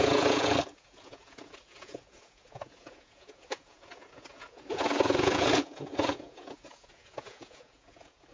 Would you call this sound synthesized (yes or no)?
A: yes